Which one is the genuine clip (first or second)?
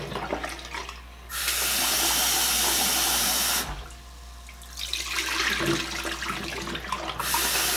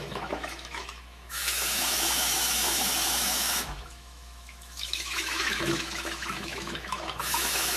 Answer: first